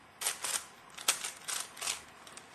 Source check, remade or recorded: recorded